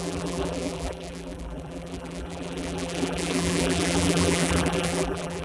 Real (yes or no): no